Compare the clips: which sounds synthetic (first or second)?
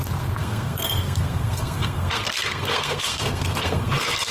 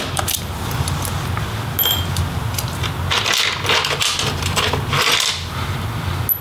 first